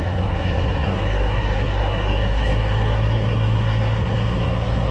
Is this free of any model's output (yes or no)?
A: no